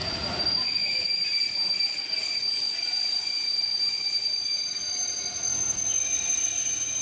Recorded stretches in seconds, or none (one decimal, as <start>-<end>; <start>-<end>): 1.6-5.1; 5.5-6.5